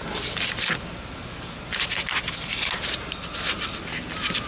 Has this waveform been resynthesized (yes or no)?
no